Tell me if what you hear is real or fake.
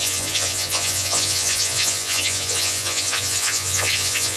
fake